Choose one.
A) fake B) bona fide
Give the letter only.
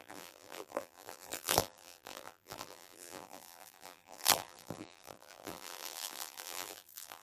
A